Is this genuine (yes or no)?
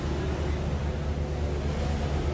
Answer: yes